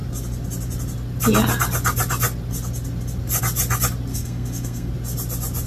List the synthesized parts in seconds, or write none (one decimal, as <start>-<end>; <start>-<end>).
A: 4.1-4.9